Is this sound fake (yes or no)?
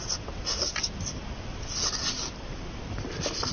no